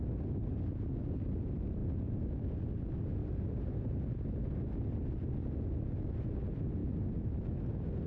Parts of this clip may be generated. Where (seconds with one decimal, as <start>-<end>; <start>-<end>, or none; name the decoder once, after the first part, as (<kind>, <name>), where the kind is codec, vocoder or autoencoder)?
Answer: 3.2-3.9 (vocoder, BigVGAN v2); 6.8-7.5

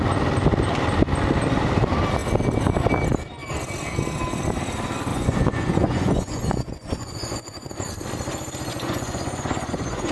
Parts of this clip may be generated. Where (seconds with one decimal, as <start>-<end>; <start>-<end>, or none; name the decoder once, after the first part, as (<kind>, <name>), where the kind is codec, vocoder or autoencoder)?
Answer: 5.1-7.7 (vocoder, Vocos); 8.7-10.1

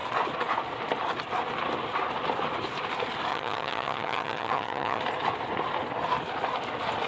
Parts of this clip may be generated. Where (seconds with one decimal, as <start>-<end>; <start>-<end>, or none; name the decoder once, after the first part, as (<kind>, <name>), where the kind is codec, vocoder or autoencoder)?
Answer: 3.3-5.0 (vocoder, HiFi-GAN)

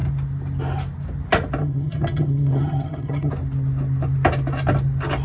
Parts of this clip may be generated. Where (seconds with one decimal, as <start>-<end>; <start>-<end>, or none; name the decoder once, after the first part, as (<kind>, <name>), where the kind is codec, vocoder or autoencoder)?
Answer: 1.6-3.3 (vocoder, HiFi-GAN)

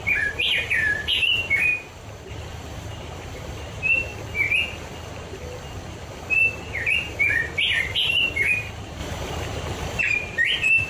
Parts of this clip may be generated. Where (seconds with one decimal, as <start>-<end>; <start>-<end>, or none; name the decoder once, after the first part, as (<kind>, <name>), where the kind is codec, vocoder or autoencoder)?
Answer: 0.0-1.7 (vocoder, BigVGAN v2); 2.3-4.1; 7.8-10.9

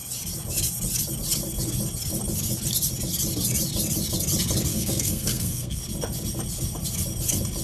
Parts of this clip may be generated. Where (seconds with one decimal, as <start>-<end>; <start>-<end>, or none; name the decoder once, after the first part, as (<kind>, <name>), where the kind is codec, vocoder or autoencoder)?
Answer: 4.7-5.8 (codec, SNAC)

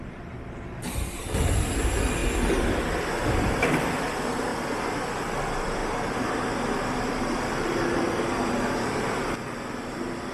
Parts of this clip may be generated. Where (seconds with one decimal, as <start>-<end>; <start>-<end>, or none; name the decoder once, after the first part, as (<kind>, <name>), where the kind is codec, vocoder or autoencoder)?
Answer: 0.0-2.2 (vocoder, BigVGAN v2); 3.3-4.5; 5.2-5.8; 6.6-10.3

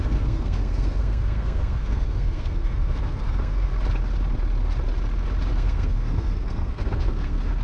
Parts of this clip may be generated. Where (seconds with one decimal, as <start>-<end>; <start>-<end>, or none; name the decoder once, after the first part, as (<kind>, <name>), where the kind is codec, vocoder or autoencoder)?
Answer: 0.0-3.7 (codec, SNAC); 5.5-7.6